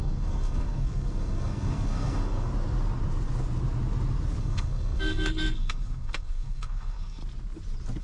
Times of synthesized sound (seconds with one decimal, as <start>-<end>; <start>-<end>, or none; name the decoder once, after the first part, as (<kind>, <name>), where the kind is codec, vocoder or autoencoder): 0.0-2.5 (codec, SNAC); 4.4-7.2